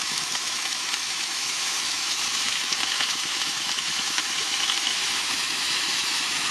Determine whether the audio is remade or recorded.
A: remade